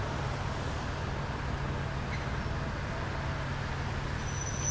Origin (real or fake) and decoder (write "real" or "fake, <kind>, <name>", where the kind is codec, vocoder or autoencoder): real